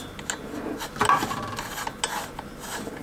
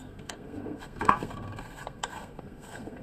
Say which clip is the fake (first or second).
second